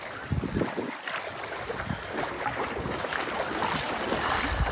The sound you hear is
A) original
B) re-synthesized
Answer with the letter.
A